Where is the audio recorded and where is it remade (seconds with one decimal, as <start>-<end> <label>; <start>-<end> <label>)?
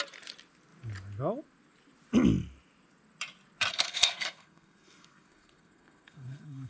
0.0-3.7 recorded; 3.7-6.7 remade